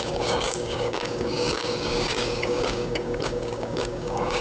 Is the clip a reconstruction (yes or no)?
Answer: yes